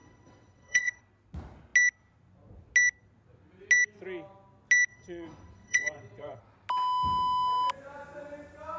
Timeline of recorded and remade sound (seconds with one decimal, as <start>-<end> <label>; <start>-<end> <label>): 0.0-1.0 remade; 1.0-4.9 recorded; 4.9-6.4 remade; 6.4-8.8 recorded